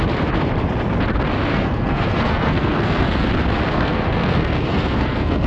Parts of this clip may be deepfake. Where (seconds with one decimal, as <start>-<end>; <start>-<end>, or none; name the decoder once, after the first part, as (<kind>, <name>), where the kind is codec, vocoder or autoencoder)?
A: 1.5-3.3 (codec, SNAC); 3.7-5.5